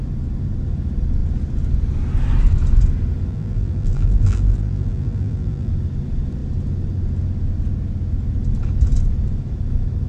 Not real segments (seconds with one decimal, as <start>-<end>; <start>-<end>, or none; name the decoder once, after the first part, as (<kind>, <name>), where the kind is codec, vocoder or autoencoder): 3.3-5.7 (vocoder, BigVGAN v2)